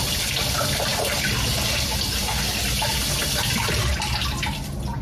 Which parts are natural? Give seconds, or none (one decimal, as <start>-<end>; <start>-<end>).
0.0-5.0